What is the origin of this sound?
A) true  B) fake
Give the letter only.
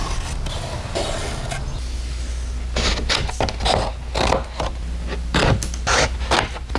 A